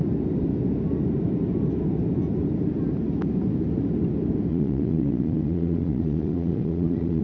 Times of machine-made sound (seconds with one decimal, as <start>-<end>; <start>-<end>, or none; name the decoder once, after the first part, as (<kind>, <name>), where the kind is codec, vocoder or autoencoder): 4.5-7.2 (vocoder, Vocos)

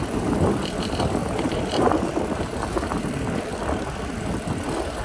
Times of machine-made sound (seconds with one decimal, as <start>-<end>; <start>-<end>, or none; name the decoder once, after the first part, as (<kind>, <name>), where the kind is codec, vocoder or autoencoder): 1.2-2.8 (vocoder, BigVGAN v2)

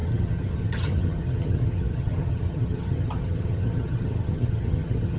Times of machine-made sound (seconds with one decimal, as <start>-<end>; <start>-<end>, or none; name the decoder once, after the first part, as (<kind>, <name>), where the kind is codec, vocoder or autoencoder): 0.0-5.2 (vocoder, HiFi-GAN)